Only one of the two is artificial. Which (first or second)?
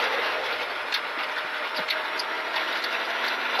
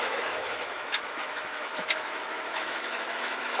second